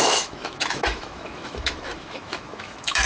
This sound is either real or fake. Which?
fake